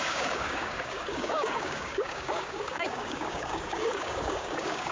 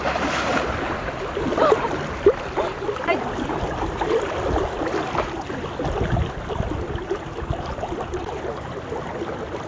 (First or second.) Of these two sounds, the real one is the second